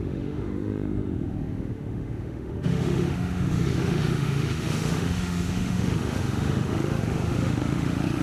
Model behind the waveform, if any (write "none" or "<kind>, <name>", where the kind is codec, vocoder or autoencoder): autoencoder, DAC-VAE